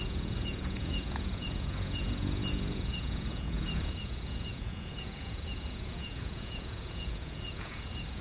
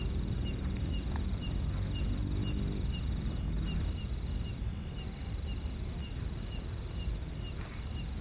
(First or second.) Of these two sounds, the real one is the second